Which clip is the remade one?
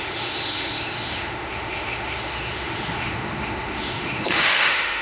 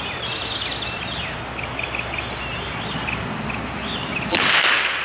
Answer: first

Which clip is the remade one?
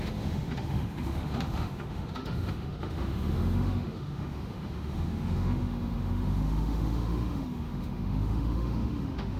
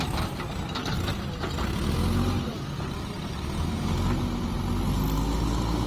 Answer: first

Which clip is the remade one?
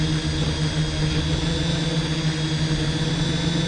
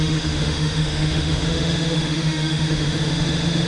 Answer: second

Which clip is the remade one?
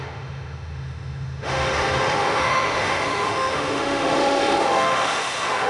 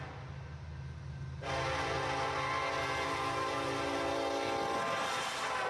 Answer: first